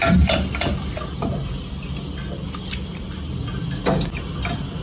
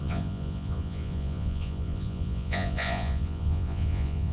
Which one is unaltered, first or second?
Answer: first